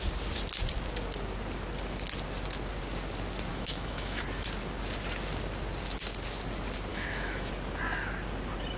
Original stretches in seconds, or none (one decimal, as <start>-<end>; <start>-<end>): 0.0-3.5; 4.2-6.9; 7.5-8.8